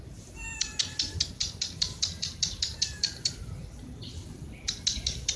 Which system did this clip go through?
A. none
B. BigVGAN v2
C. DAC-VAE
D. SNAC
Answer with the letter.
B